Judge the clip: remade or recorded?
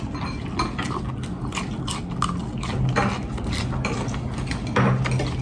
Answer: recorded